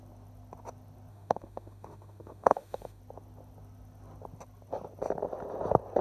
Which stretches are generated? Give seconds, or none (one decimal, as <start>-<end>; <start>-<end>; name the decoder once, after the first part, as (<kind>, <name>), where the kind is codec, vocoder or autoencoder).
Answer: 1.1-3.0 (autoencoder, DAC-VAE)